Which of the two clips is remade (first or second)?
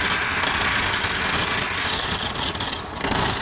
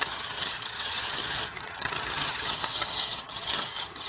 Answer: second